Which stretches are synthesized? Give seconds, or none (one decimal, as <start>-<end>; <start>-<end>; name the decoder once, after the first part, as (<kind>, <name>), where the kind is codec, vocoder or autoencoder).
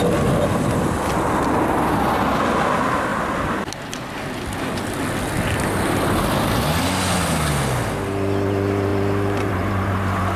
none